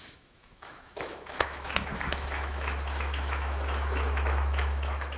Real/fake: fake